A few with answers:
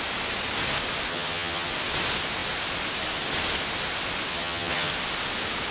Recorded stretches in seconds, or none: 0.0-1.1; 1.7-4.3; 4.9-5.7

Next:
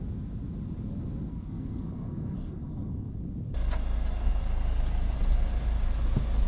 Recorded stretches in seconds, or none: 0.0-1.3; 3.1-6.5

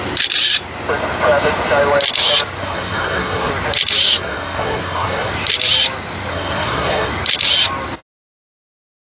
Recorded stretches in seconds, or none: 0.0-2.6; 3.5-4.0; 5.3-6.3; 7.1-9.1

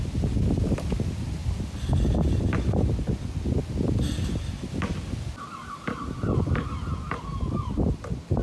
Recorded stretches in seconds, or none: 0.0-8.4

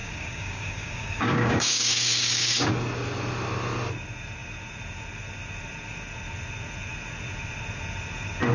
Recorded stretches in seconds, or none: 2.7-8.5